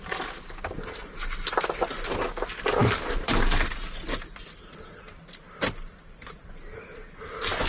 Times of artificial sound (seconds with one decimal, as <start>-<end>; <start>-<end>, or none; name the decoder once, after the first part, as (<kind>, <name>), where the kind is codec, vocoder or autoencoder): none